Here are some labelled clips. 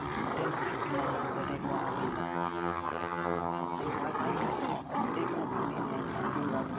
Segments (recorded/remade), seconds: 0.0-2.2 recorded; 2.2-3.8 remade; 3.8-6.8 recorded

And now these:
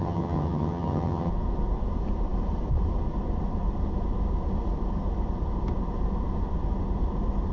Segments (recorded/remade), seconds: 0.0-1.3 remade; 1.3-7.5 recorded

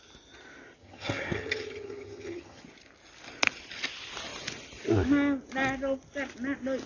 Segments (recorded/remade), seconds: 0.0-0.8 recorded; 0.8-2.6 remade; 2.6-6.9 recorded